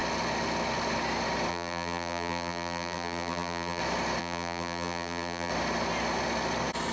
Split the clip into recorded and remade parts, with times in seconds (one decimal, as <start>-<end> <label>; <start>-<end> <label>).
0.0-1.5 recorded; 1.5-3.8 remade; 3.8-4.2 recorded; 4.2-5.5 remade; 5.5-6.9 recorded